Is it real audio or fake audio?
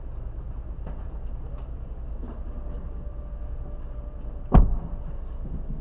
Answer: real